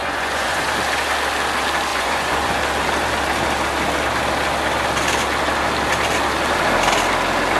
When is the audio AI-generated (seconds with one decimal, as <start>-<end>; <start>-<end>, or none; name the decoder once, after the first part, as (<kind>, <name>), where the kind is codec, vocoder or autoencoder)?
0.0-0.6 (vocoder, Vocos); 1.9-2.6